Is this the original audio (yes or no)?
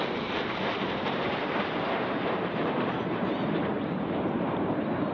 no